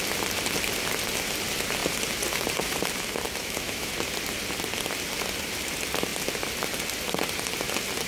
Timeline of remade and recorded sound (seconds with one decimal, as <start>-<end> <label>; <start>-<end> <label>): 0.0-3.4 recorded; 3.4-3.9 remade; 3.9-8.1 recorded